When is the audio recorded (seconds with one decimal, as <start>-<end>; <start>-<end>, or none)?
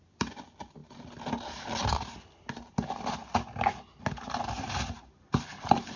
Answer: 0.0-6.0